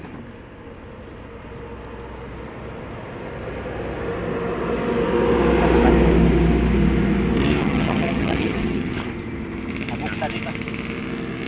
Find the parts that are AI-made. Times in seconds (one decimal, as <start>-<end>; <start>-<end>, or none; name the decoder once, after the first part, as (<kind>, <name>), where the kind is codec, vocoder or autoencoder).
7.6-8.9 (vocoder, HiFi-GAN)